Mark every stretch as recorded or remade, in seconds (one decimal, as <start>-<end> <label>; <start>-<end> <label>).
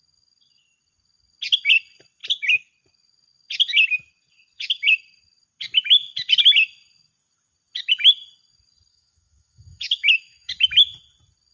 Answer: 0.0-8.9 recorded; 8.9-10.5 remade; 10.5-11.5 recorded